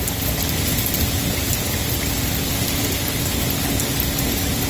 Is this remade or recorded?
recorded